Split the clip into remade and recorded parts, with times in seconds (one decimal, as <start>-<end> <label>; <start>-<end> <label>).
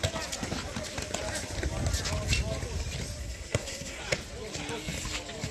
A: 0.0-3.2 recorded; 3.2-4.0 remade; 4.0-5.5 recorded